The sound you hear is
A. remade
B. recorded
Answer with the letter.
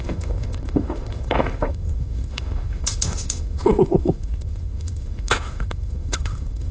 A